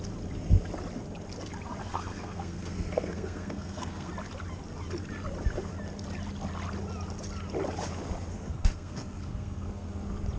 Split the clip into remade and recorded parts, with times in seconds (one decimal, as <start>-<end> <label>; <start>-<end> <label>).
0.0-1.8 recorded; 1.8-4.1 remade; 4.1-8.3 recorded; 8.3-9.9 remade; 9.9-10.4 recorded